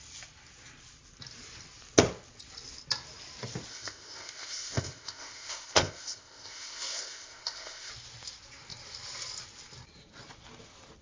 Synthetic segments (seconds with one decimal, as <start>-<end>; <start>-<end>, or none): 3.7-7.9